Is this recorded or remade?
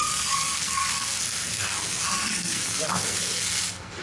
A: remade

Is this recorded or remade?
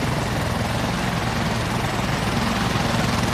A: recorded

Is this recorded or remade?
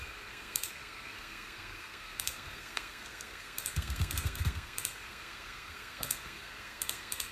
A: remade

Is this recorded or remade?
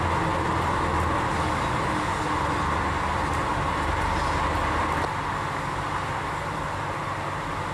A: recorded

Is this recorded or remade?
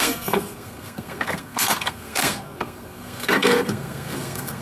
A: remade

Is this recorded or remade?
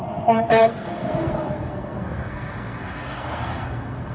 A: remade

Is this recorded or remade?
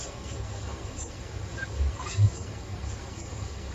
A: remade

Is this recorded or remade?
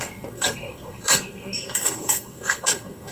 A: remade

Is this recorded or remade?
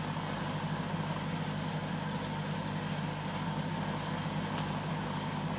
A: recorded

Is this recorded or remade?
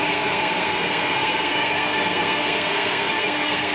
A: remade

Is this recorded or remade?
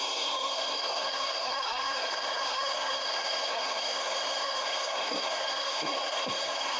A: remade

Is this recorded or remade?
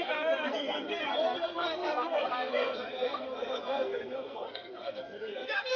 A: remade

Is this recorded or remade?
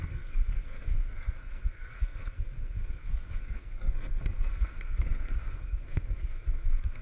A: remade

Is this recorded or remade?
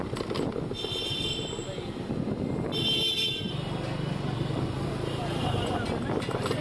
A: recorded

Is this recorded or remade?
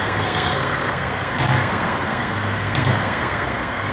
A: remade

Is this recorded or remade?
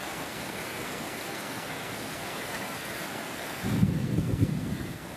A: remade